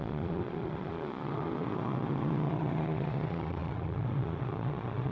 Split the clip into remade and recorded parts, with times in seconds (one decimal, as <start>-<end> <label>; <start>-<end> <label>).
0.0-5.1 remade